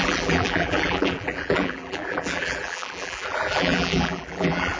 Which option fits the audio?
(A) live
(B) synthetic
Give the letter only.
B